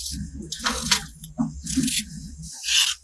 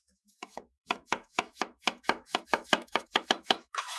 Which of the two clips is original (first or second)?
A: first